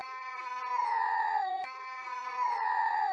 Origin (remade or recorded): remade